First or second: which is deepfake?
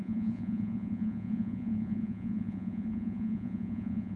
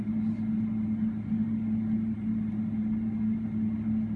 first